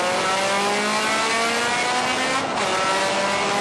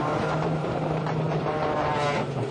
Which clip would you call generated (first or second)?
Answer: second